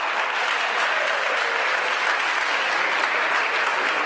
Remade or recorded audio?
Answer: recorded